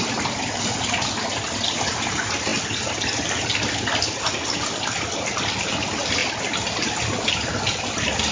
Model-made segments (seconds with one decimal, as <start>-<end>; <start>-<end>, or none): none